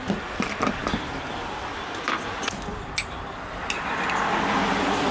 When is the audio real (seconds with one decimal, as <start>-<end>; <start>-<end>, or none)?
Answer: 0.0-5.1